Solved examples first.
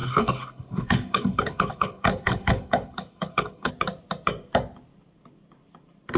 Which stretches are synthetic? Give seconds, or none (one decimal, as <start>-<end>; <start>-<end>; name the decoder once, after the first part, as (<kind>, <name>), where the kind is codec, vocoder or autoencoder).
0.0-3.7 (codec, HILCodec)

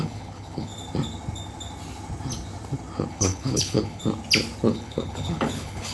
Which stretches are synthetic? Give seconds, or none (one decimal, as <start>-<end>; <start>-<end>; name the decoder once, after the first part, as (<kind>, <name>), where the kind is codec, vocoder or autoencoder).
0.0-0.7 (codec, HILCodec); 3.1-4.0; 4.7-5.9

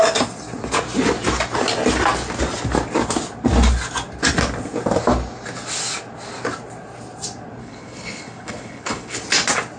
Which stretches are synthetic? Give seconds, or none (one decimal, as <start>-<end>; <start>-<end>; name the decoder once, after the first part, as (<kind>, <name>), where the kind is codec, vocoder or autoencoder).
7.6-9.2 (codec, HILCodec)

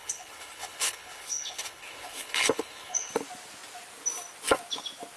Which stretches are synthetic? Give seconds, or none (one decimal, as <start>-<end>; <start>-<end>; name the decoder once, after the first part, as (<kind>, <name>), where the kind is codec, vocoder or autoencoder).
0.0-3.1 (codec, HILCodec)

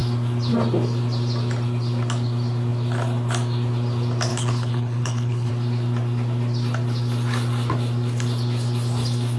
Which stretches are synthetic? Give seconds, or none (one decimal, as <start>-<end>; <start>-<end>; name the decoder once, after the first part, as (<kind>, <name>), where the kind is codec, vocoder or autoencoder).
4.3-5.5 (codec, HILCodec)

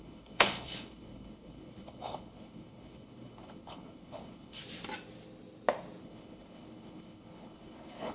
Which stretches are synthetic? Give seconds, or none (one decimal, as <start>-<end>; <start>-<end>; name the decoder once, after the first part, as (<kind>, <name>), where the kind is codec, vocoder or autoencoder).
0.0-4.6 (codec, HILCodec); 6.0-8.1